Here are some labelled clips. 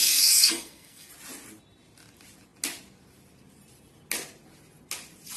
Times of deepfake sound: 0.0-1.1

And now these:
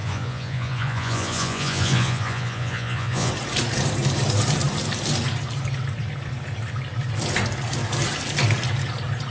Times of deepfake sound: 0.0-3.3

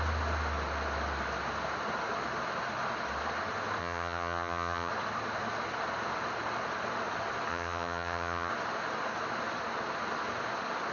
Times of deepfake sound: 3.8-4.9; 7.5-8.5

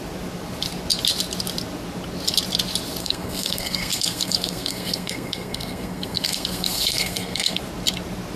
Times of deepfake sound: 3.0-7.6

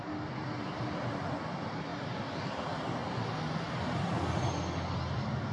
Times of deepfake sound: none

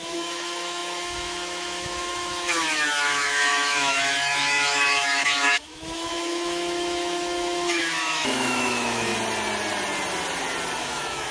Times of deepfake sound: 0.0-9.1; 10.8-11.3